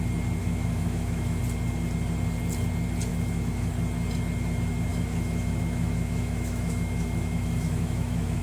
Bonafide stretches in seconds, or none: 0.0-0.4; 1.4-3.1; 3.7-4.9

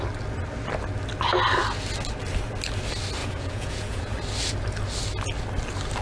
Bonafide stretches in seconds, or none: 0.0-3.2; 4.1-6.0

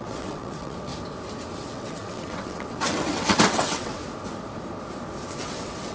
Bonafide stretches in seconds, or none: 0.9-1.6; 4.0-5.3

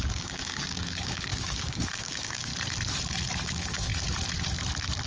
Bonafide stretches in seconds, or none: 2.5-3.4; 3.9-5.1

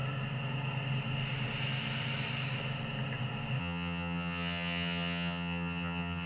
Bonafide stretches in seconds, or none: 0.0-3.6